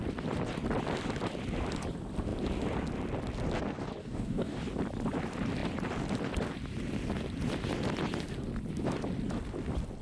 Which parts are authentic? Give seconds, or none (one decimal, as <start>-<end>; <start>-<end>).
0.0-4.0; 4.6-10.0